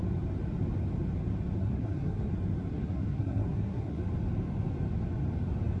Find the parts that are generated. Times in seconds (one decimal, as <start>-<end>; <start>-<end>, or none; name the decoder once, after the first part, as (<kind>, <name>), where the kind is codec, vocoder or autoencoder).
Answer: 1.6-2.3 (codec, SNAC); 2.7-4.0